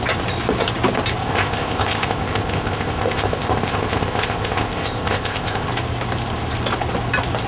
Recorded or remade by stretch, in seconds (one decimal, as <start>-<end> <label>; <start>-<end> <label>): 0.0-1.2 recorded; 1.2-5.7 remade; 5.7-7.5 recorded